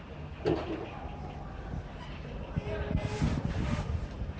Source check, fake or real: real